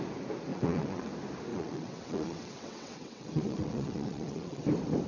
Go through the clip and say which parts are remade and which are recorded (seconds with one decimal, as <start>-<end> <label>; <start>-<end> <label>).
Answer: 0.0-0.5 recorded; 0.5-1.1 remade; 1.1-1.5 recorded; 1.5-4.6 remade; 4.6-5.1 recorded